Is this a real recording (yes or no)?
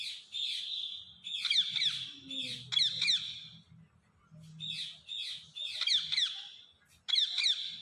yes